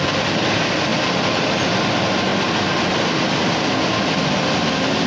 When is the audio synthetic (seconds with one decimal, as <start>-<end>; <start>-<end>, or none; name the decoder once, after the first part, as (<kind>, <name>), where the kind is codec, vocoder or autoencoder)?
none